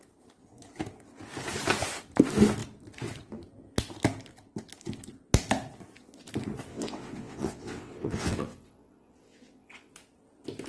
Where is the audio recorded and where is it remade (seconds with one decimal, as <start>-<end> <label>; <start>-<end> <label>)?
0.0-6.7 recorded; 6.7-9.9 remade; 9.9-10.7 recorded